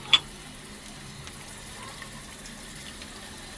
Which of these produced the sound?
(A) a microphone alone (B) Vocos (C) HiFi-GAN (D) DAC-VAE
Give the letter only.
A